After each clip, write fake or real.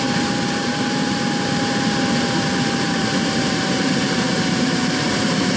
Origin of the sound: fake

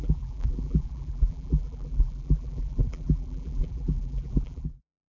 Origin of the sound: fake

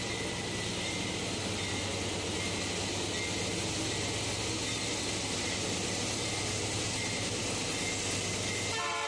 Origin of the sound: real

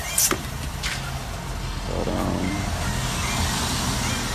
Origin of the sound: real